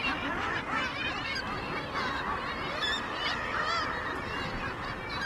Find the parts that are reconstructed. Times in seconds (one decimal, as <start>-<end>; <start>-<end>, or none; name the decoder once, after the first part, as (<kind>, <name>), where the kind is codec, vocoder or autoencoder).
none